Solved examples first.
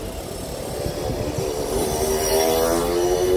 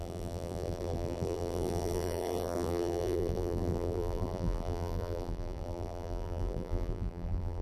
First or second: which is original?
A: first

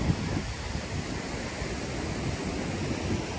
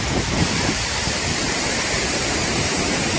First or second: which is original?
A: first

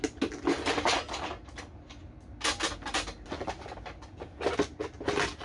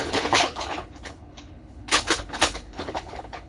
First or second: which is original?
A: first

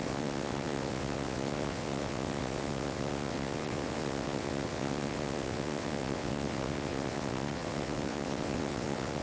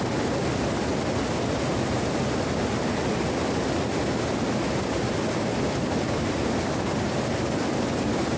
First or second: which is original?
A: second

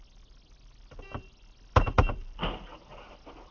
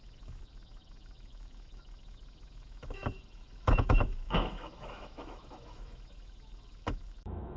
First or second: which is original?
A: first